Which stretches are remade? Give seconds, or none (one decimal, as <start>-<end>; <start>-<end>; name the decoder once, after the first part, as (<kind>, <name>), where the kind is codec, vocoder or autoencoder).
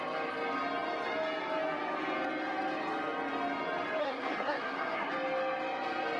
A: 4.0-5.1 (codec, SNAC)